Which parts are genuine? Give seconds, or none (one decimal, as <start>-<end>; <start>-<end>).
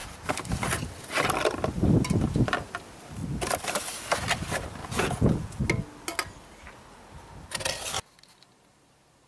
0.0-4.8; 5.6-9.3